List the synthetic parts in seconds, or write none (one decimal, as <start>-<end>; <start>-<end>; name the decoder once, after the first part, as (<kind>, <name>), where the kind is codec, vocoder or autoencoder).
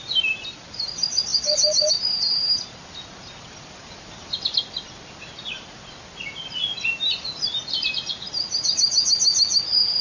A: none